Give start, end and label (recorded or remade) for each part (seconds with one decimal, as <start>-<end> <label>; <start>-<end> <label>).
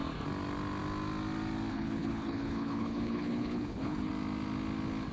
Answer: 0.0-1.7 recorded; 1.7-4.1 remade; 4.1-5.1 recorded